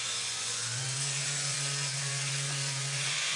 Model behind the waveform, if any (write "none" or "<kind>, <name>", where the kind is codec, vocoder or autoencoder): vocoder, Vocos